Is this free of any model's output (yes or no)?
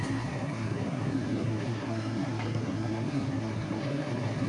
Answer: no